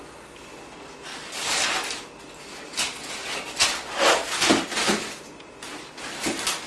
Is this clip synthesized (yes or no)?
no